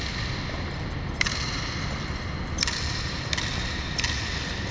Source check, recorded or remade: recorded